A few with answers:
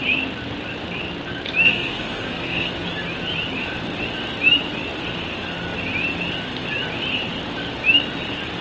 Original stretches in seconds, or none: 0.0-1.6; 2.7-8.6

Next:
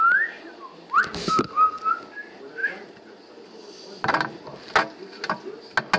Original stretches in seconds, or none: 0.0-1.2; 1.8-6.0

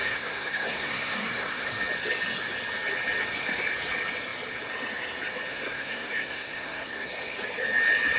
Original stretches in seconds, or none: 1.7-5.5; 7.1-8.2

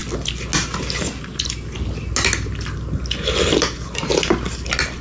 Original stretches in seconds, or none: 0.0-5.0

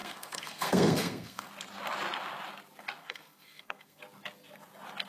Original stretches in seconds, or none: 1.5-3.0; 4.0-5.1

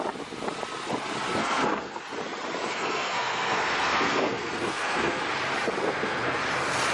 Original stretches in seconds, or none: 0.0-1.4; 2.0-2.7; 5.2-5.8; 6.4-6.9

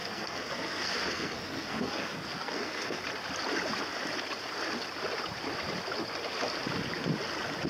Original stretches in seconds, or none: 3.0-7.7

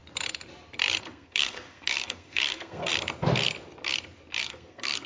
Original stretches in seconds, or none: 0.0-1.0; 2.9-4.4